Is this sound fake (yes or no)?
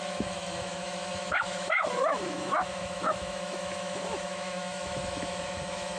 yes